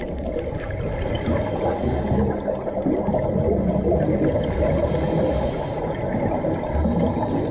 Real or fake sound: real